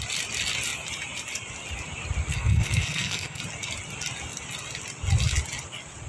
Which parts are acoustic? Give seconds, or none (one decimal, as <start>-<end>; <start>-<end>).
0.0-2.3; 3.4-6.1

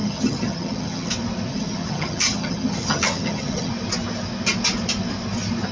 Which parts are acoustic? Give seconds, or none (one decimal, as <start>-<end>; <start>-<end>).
1.1-1.5; 3.7-5.7